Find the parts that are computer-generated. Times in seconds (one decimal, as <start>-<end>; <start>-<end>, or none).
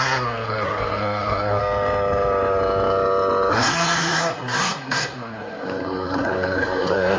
0.0-1.6; 3.5-7.2